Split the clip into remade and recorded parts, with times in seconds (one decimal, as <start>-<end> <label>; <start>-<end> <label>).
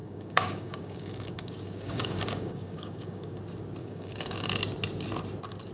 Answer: 0.0-3.4 remade; 3.4-3.8 recorded; 3.8-4.6 remade; 4.6-5.7 recorded